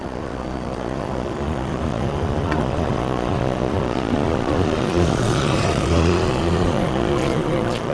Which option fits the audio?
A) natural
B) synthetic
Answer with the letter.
B